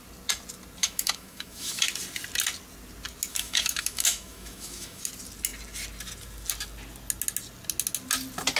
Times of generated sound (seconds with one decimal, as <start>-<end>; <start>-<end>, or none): 0.8-1.8; 3.3-5.0